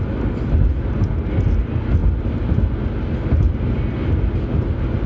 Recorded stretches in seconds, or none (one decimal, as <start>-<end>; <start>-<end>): 0.0-5.1